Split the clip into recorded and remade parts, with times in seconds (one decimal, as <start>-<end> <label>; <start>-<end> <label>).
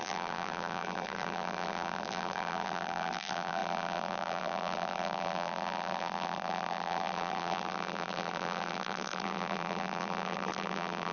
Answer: 0.0-11.1 remade